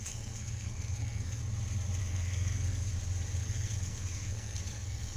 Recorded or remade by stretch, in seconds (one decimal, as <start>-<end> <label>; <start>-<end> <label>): 0.0-1.4 remade; 1.4-2.0 recorded; 2.0-2.9 remade; 2.9-3.4 recorded; 3.4-5.2 remade